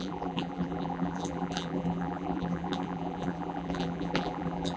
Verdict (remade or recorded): remade